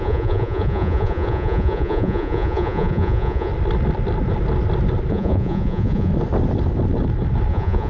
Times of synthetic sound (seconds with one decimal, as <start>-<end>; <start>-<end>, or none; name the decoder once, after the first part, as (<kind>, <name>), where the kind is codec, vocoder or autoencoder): 0.0-3.5 (vocoder, Vocos); 5.1-6.1; 7.5-7.9